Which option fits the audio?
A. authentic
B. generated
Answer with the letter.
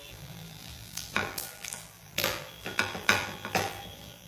B